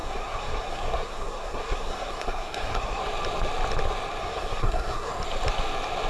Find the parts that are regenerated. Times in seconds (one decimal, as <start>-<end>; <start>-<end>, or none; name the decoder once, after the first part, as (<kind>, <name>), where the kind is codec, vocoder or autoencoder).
0.0-3.0 (codec, SNAC); 4.2-5.1